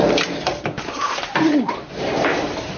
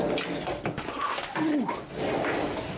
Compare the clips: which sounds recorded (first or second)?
second